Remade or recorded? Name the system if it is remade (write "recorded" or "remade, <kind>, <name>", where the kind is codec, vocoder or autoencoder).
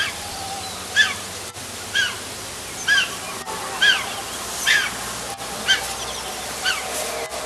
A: recorded